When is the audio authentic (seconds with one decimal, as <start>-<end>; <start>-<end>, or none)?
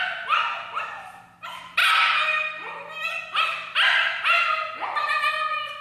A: 0.0-5.8